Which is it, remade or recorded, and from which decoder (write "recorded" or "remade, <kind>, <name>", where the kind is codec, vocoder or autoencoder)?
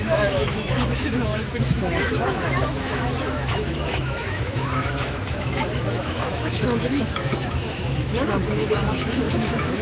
remade, autoencoder, DAC-VAE